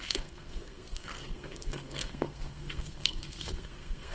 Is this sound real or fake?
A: fake